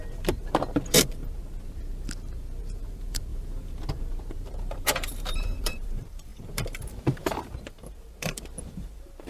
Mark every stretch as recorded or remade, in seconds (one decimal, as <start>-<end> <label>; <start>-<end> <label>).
0.0-1.2 remade; 1.2-2.6 recorded; 2.6-3.3 remade; 3.3-3.9 recorded; 3.9-9.3 remade